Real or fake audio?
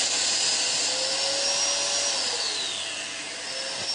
real